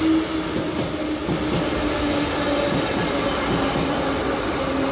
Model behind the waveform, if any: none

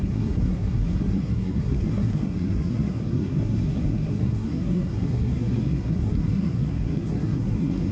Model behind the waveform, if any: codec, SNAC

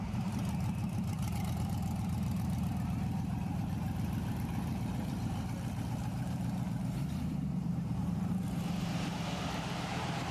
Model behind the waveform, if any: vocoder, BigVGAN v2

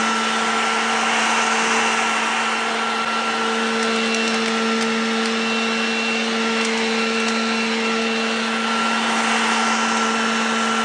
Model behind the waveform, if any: none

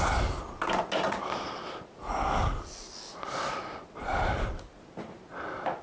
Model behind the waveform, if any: none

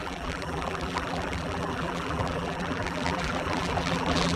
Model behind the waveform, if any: vocoder, BigVGAN v2